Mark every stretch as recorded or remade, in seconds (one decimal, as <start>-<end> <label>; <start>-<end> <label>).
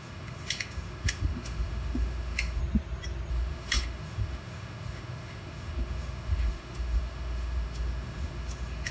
0.0-2.6 remade; 2.6-3.3 recorded; 3.3-8.9 remade